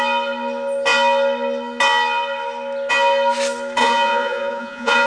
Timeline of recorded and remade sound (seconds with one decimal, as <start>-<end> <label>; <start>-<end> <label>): 0.0-3.8 recorded; 3.8-5.1 remade